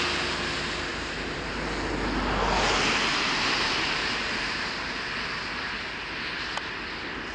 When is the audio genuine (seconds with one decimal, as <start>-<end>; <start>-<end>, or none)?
0.0-0.9; 1.5-3.1; 4.7-7.3